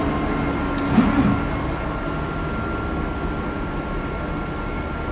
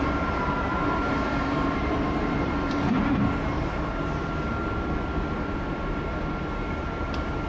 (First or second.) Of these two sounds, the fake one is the second